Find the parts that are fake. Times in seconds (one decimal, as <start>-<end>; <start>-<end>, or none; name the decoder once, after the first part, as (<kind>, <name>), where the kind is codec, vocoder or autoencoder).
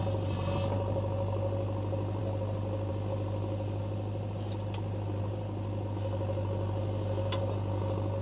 none